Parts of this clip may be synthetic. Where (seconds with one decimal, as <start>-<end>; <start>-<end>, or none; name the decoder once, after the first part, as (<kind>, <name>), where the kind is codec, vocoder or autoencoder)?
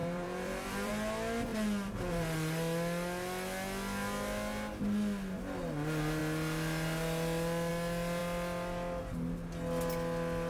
0.0-0.9 (vocoder, BigVGAN v2)